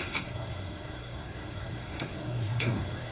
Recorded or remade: remade